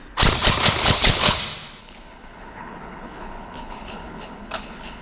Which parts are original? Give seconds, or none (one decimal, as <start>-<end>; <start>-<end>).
0.0-0.8; 1.4-1.8